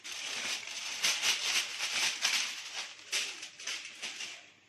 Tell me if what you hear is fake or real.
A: real